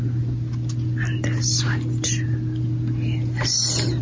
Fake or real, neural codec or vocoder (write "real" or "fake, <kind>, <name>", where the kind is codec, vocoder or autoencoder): real